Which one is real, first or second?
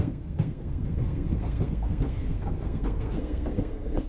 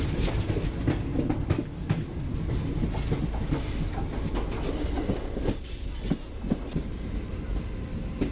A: second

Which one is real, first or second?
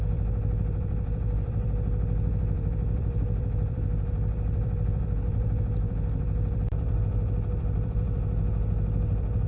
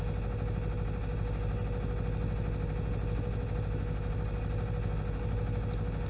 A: second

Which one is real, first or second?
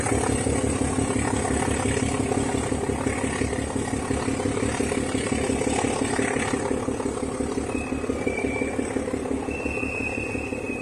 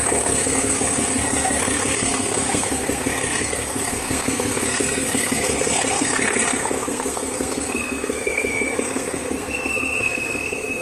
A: first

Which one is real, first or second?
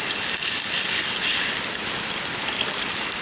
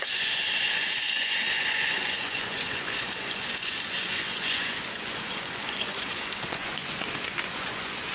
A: first